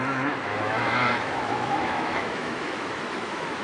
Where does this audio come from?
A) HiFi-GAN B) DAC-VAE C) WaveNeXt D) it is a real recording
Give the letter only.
B